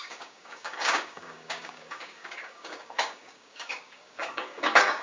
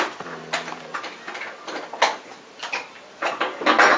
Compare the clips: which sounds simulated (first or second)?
first